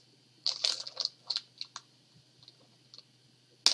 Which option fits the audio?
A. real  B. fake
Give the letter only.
A